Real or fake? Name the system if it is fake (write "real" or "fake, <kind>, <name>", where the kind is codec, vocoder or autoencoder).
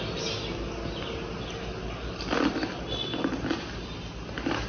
real